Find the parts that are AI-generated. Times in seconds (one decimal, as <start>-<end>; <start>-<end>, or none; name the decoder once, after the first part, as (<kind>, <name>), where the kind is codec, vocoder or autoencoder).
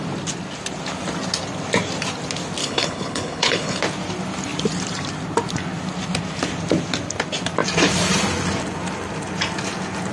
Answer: 2.6-3.8 (codec, HILCodec)